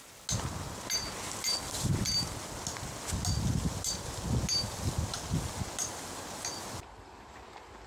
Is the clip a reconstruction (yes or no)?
no